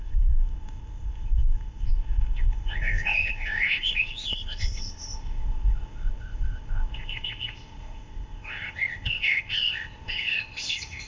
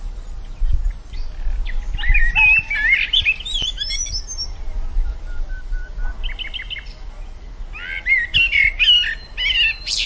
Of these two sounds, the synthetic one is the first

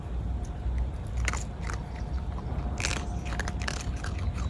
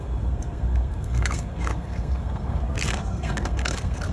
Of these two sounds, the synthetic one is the second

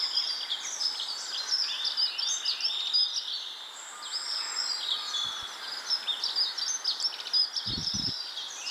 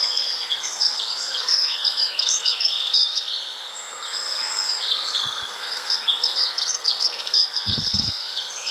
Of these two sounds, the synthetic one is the second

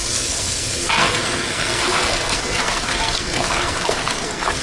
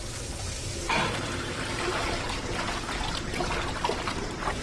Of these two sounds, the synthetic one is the first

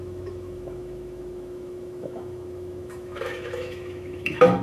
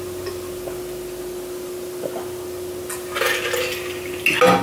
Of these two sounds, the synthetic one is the first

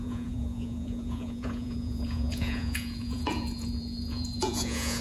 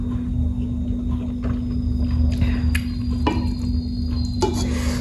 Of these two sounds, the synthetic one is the first